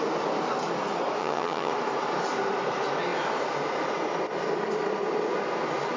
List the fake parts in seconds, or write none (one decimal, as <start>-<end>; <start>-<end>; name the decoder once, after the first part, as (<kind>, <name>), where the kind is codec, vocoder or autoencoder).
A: 1.2-1.7 (vocoder, HiFi-GAN)